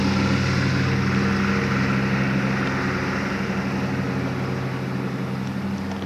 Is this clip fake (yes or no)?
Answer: no